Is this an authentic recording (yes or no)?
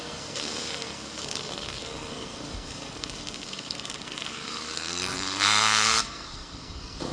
no